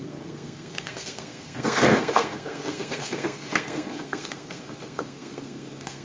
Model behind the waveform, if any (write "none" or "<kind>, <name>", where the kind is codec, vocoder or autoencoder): codec, SNAC